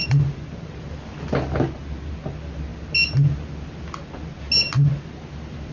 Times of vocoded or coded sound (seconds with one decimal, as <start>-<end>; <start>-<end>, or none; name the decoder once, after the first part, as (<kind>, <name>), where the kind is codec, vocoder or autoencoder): none